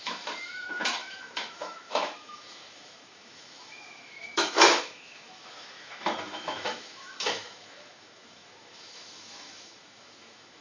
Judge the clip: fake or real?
fake